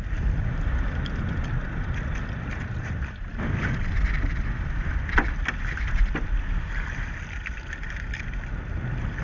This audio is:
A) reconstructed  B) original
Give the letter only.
B